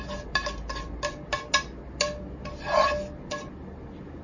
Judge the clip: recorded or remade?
recorded